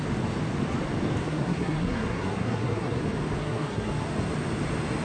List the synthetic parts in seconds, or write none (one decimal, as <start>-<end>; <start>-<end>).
1.2-3.0; 3.4-3.9